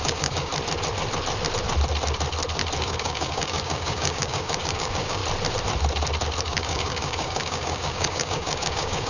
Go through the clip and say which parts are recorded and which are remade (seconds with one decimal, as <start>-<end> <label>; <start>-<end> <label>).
0.0-0.5 remade; 0.5-2.8 recorded; 2.8-5.2 remade; 5.2-6.4 recorded; 6.4-9.1 remade